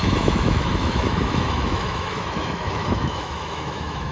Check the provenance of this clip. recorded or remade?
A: remade